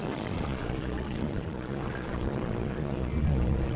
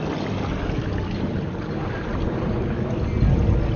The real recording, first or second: second